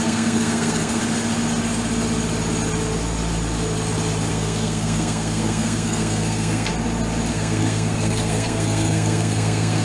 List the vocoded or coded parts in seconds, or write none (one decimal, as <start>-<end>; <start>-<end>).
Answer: 0.0-1.0; 4.3-6.7; 7.3-9.8